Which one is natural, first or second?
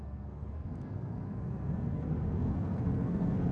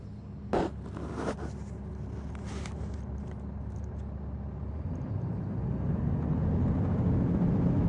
second